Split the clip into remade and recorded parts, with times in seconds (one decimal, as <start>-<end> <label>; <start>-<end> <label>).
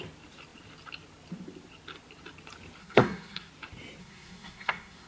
0.0-2.8 recorded; 2.8-3.5 remade; 3.5-4.0 recorded; 4.0-5.1 remade